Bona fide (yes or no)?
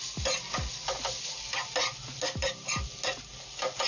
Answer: yes